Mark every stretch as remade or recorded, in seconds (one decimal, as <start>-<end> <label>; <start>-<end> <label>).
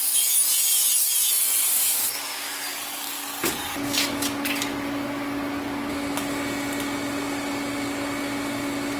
0.0-1.6 recorded; 1.6-2.2 remade; 2.2-2.7 recorded; 2.7-5.9 remade; 5.9-9.0 recorded